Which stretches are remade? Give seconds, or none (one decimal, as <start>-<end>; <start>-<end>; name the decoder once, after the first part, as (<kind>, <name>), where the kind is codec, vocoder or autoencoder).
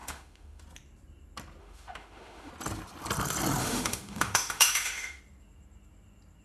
0.0-0.6 (autoencoder, DAC-VAE); 1.6-2.5; 3.6-5.2